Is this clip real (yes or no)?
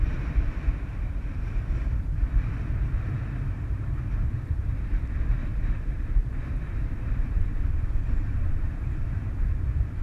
no